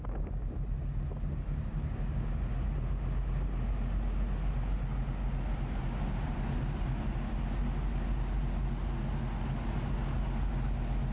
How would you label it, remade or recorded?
recorded